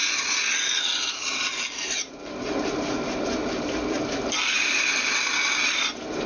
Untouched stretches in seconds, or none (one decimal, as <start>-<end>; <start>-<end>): 0.0-6.3